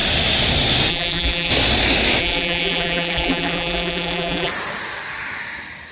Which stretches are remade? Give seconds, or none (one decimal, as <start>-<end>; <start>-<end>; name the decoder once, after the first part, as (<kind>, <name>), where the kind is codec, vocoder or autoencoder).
0.9-1.5 (vocoder, BigVGAN v2); 2.2-4.5